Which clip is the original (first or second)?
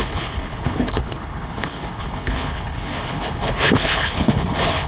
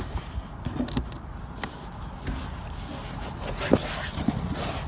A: second